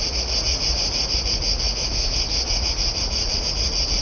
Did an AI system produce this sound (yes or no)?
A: yes